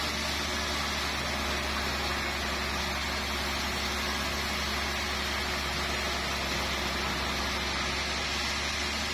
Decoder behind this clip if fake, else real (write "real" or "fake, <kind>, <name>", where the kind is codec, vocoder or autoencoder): real